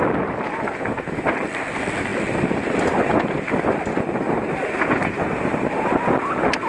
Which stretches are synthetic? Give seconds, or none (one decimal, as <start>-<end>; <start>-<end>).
5.0-6.2